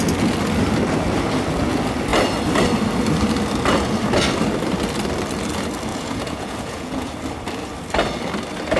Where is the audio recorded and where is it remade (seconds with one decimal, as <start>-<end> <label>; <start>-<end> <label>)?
0.0-5.9 recorded; 5.9-7.1 remade; 7.1-8.8 recorded

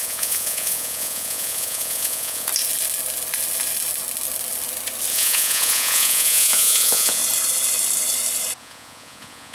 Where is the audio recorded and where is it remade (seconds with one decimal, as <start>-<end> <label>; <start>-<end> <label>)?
0.0-2.5 remade; 2.5-5.1 recorded; 5.1-7.2 remade; 7.2-8.6 recorded; 8.6-9.5 remade

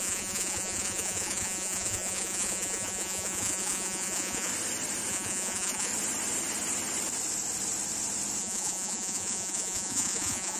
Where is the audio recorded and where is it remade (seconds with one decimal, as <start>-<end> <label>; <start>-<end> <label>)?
0.0-4.5 remade; 4.5-5.1 recorded; 5.1-5.9 remade; 5.9-8.4 recorded; 8.4-10.6 remade